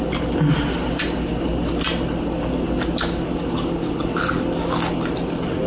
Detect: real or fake real